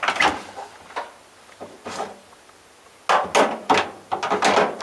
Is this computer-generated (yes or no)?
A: no